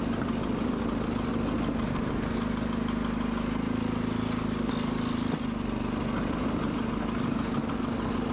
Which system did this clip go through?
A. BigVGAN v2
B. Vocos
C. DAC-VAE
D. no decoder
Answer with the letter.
D